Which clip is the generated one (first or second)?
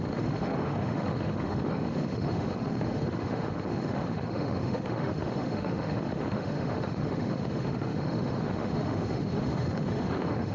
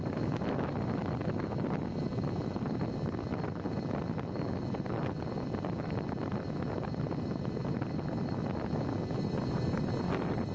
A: first